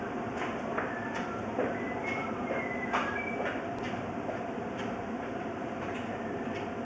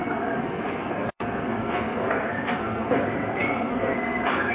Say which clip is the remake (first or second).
second